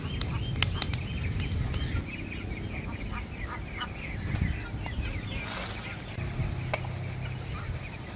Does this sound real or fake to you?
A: real